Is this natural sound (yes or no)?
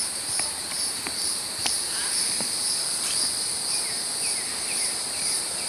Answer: no